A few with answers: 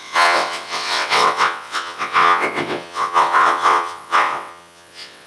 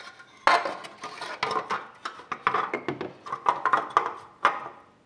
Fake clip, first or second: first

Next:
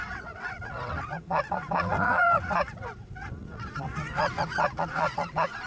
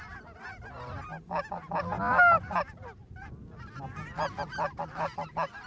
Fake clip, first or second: first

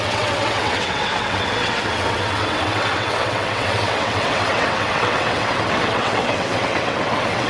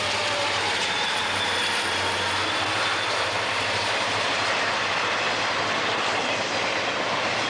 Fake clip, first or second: first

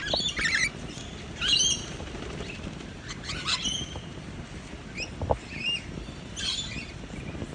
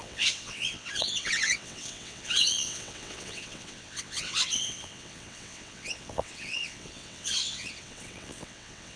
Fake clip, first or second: second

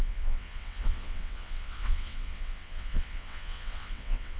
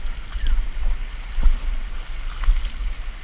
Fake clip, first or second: first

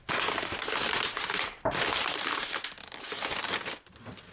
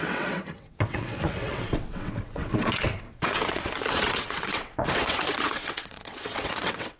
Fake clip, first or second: second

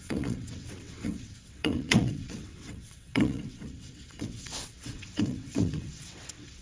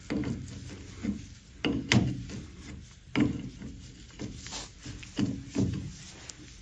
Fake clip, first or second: first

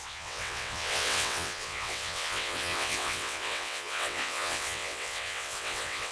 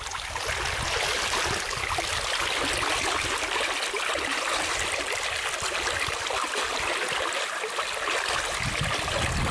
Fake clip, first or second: first